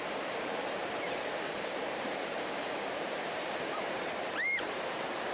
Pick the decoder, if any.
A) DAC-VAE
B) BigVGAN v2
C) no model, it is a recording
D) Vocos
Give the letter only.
B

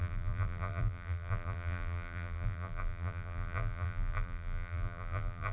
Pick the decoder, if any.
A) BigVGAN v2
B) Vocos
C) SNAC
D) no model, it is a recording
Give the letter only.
A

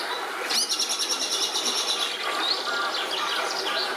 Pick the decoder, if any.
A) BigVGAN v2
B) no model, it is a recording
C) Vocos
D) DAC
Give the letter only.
B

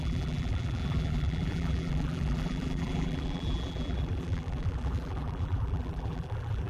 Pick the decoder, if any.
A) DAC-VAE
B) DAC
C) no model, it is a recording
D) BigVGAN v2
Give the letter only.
D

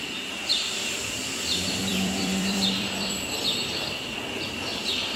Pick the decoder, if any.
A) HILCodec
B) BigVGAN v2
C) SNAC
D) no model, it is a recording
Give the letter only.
B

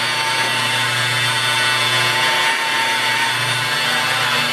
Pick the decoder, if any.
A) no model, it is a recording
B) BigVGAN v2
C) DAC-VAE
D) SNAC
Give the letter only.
A